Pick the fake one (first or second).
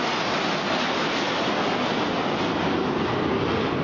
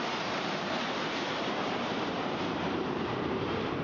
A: second